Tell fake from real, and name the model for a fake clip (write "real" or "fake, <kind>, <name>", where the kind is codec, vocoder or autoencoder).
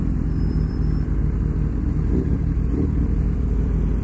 fake, vocoder, BigVGAN v2